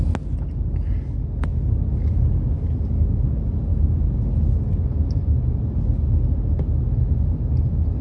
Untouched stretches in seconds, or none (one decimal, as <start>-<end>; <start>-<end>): 0.0-8.0